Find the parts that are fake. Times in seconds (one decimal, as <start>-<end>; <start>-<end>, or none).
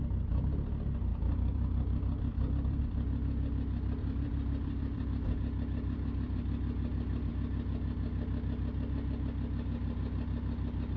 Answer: 1.1-2.8; 4.0-7.3